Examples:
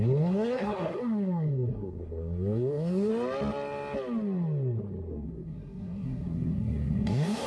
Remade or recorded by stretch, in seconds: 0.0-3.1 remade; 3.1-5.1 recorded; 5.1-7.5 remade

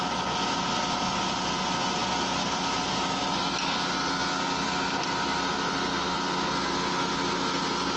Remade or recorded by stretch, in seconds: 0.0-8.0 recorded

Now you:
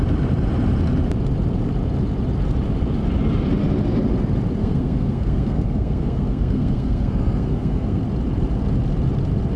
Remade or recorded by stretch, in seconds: 0.0-4.6 recorded; 4.6-8.0 remade; 8.0-9.6 recorded